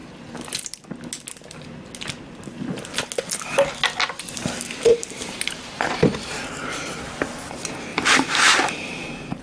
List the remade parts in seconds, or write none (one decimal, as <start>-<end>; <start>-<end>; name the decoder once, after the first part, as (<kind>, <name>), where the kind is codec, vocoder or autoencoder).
4.9-6.3 (vocoder, BigVGAN v2); 7.9-9.4